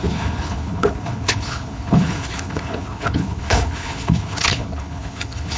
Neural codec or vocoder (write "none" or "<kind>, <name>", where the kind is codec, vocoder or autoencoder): codec, HILCodec